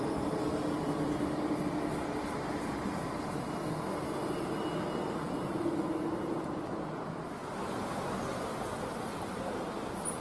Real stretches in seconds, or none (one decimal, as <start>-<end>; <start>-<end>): 0.0-10.2